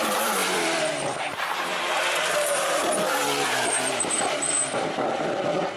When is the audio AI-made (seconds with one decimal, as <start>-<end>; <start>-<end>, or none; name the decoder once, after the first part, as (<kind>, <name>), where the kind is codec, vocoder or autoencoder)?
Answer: 0.0-2.8 (vocoder, BigVGAN v2); 3.9-5.8